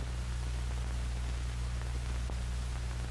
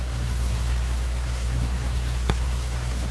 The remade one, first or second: second